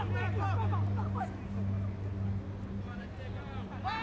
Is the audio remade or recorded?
recorded